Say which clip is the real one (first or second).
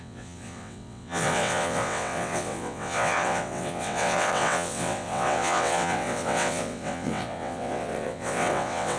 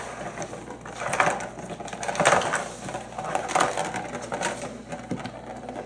second